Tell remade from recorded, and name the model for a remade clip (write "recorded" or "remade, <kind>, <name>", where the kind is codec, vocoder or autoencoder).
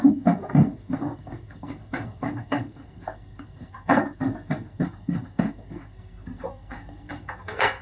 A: remade, codec, SNAC